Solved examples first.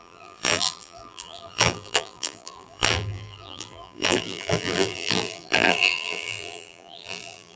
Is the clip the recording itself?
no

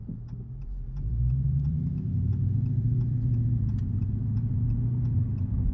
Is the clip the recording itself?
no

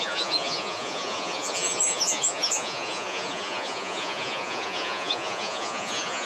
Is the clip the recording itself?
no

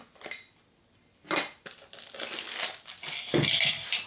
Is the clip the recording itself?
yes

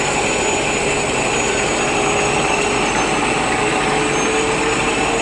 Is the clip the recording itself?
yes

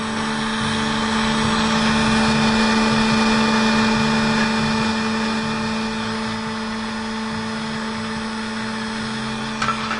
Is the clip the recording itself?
yes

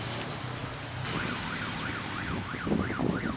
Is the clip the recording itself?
yes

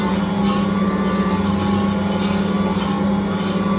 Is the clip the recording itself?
yes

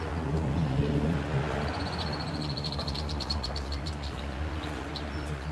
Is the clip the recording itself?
no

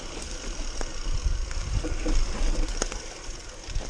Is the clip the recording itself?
yes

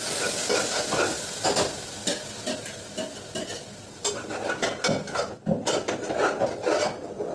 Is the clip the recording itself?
yes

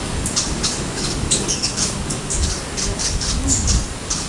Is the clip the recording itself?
no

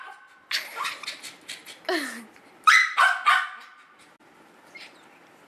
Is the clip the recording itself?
yes